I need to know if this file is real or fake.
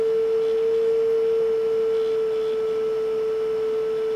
real